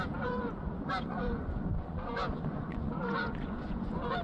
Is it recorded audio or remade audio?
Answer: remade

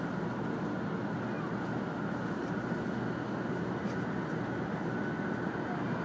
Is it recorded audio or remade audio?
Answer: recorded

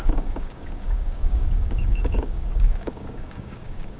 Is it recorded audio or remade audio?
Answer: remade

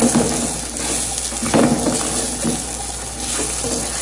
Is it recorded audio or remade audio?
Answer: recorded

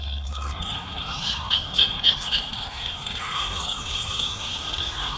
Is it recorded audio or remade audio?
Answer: remade